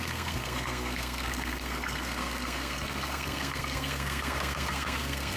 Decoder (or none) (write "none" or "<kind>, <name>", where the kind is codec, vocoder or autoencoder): codec, SNAC